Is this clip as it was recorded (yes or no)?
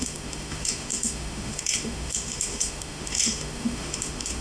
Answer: no